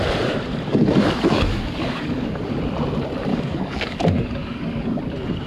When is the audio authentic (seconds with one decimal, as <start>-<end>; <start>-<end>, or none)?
0.0-0.7; 2.5-3.3; 5.0-5.5